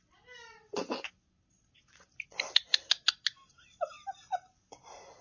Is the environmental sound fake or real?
real